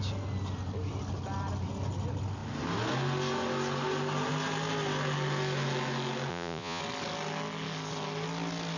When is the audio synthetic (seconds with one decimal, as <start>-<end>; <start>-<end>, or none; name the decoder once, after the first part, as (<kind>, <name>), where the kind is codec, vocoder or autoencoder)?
6.3-6.8 (vocoder, Vocos)